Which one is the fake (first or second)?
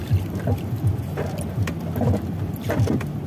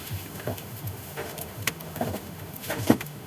second